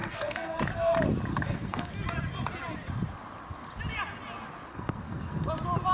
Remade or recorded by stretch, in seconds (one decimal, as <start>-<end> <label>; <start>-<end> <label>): 0.0-0.6 remade; 0.6-1.3 recorded; 1.3-1.9 remade; 1.9-4.7 recorded; 4.7-5.5 remade; 5.5-5.9 recorded